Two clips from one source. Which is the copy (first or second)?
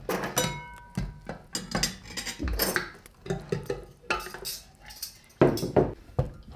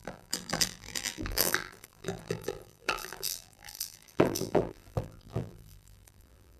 second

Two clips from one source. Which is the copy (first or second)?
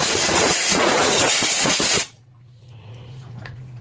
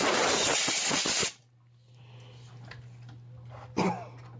first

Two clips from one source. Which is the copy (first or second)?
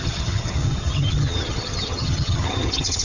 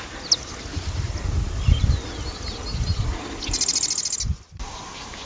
first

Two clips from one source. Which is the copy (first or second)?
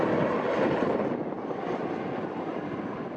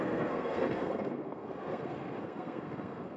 second